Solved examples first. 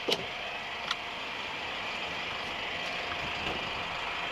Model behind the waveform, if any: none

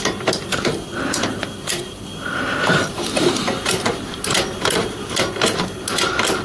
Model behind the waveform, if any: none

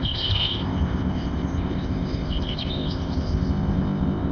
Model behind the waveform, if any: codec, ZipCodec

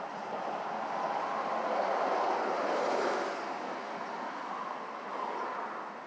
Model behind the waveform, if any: none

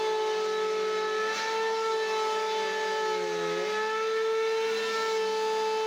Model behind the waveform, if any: none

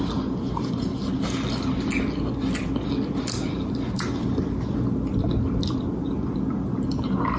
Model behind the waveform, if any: none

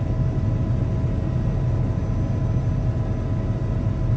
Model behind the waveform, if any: none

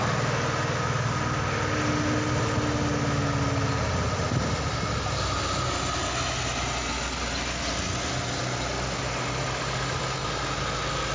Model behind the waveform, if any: none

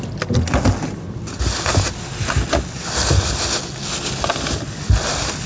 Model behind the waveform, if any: none